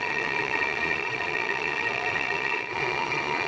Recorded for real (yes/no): no